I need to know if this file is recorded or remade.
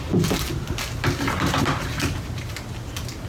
recorded